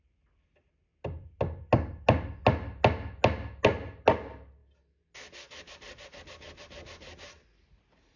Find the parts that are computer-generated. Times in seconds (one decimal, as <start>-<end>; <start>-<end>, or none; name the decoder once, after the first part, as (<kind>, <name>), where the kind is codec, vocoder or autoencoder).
none